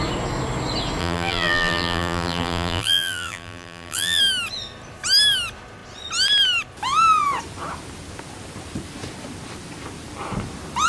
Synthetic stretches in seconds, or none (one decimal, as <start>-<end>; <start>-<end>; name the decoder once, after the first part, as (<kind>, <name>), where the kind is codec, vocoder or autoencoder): 1.0-4.2 (vocoder, BigVGAN v2)